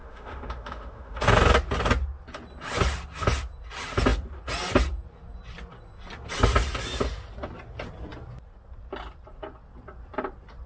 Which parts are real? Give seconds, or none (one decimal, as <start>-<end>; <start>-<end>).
1.2-10.7